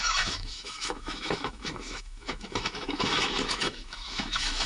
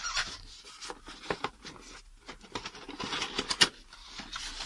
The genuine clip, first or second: second